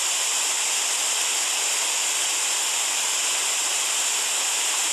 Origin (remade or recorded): recorded